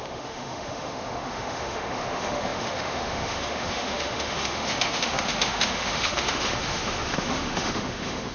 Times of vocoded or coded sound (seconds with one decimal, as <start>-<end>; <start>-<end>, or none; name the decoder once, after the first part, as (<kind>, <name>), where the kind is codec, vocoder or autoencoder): 0.0-8.3 (autoencoder, DAC-VAE)